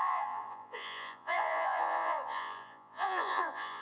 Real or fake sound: fake